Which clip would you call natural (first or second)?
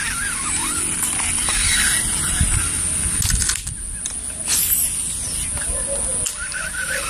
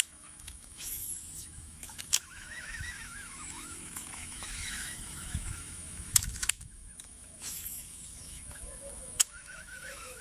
first